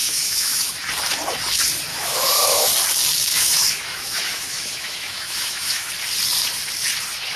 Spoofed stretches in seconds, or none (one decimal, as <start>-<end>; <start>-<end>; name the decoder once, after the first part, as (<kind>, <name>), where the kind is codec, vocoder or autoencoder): 0.0-0.7 (autoencoder, DAC-VAE); 1.9-2.7; 3.3-5.9